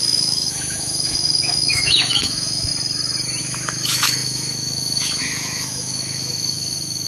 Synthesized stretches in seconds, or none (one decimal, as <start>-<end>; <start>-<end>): 0.0-2.7; 3.4-7.1